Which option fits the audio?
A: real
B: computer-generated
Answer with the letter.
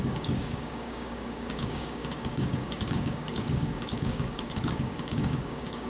B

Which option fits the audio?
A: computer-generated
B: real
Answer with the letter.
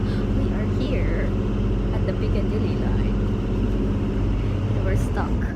B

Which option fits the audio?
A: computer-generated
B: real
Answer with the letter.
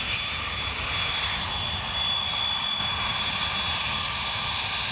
B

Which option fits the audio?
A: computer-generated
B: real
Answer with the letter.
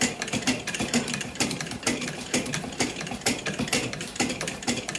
A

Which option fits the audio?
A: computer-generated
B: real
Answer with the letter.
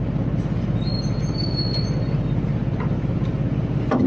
B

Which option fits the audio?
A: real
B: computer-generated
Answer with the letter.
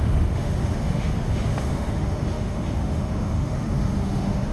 B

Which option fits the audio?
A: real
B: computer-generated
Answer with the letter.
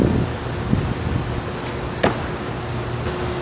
A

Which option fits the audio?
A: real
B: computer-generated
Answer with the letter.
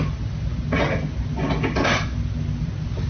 A